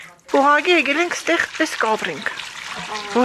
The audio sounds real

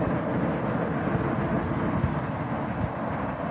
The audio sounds real